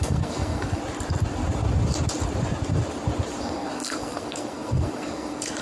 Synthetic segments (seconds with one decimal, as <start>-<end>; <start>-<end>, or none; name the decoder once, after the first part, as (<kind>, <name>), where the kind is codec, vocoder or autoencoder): 0.0-0.8 (codec, SNAC); 3.4-5.6